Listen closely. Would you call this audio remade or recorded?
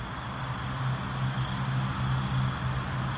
recorded